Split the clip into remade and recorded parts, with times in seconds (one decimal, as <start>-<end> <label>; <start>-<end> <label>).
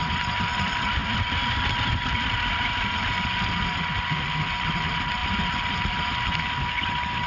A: 0.0-7.3 recorded